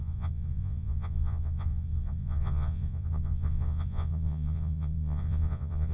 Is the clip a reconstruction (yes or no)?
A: yes